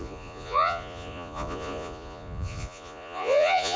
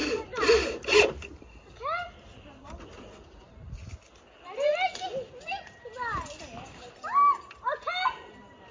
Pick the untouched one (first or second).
second